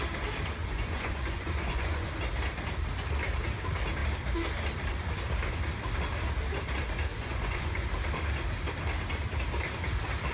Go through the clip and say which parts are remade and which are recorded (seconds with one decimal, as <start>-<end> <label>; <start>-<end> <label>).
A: 0.0-0.6 recorded; 0.6-2.1 remade; 2.1-7.1 recorded; 7.1-7.9 remade; 7.9-10.3 recorded